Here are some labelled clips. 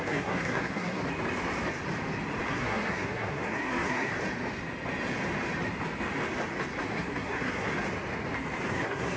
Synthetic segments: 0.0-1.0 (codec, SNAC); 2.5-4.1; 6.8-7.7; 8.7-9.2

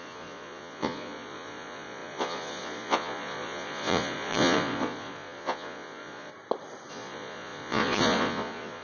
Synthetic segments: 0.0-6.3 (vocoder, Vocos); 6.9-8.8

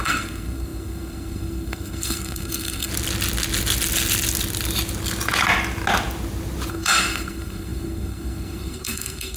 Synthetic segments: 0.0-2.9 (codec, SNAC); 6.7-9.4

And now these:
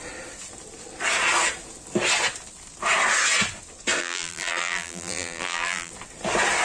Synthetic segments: 4.0-5.9 (vocoder, BigVGAN v2)